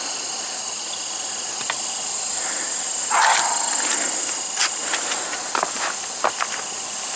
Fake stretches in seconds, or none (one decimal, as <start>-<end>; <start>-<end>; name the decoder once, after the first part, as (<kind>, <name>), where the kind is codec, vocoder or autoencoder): none